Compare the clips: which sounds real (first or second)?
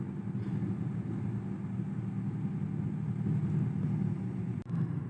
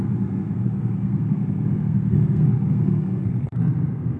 first